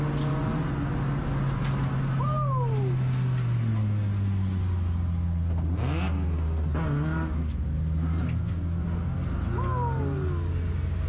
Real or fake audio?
real